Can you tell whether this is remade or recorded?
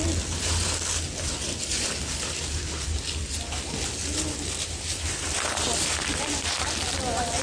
recorded